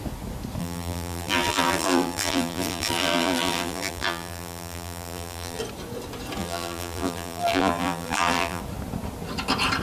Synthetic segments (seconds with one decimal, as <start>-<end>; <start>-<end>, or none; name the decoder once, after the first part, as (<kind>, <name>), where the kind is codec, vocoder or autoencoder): 0.6-5.6 (vocoder, BigVGAN v2); 6.4-8.6